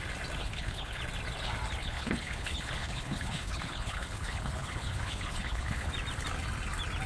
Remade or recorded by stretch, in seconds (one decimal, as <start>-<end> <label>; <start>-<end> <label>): 0.0-0.4 recorded; 0.4-1.0 remade; 1.0-1.8 recorded; 1.8-5.9 remade; 5.9-7.1 recorded